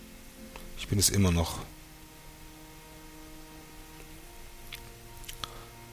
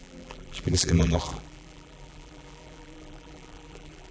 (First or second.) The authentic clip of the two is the first